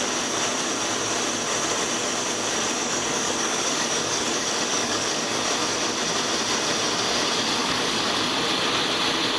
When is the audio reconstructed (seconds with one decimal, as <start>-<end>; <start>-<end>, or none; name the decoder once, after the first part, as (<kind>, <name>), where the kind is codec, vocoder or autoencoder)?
2.8-5.4 (codec, DAC); 7.6-8.2